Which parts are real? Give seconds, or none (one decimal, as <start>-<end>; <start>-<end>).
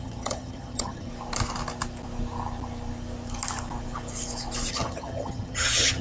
1.1-4.7